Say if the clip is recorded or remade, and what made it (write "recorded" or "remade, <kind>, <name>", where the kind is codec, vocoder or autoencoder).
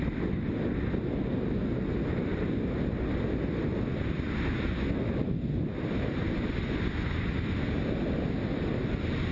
recorded